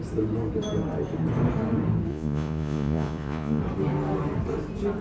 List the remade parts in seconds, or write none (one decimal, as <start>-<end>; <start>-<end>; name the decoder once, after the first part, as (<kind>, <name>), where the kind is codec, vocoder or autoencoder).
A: 2.1-3.6 (vocoder, Vocos)